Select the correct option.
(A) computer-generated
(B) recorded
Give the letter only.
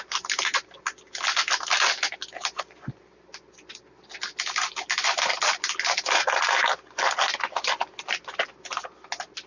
B